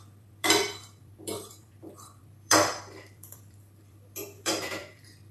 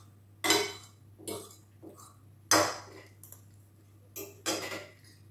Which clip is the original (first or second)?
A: second